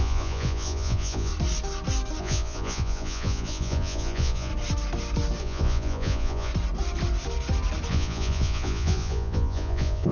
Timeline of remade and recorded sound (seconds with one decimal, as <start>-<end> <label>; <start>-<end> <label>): 0.0-1.3 remade; 1.3-2.2 recorded; 2.2-4.5 remade; 4.5-5.4 recorded; 5.4-6.5 remade; 6.5-7.9 recorded; 7.9-10.1 remade